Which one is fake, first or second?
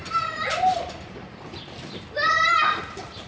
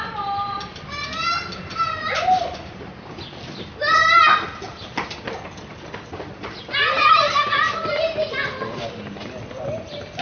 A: first